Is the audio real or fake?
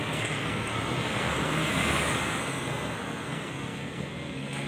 fake